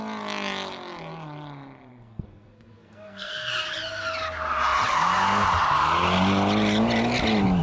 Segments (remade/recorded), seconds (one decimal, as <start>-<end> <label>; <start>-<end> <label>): 0.0-1.9 recorded; 1.9-3.5 remade; 3.5-7.6 recorded